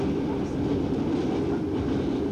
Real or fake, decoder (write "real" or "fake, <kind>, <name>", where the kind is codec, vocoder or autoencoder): real